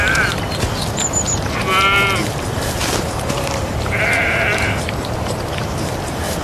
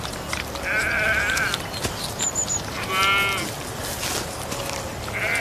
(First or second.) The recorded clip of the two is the second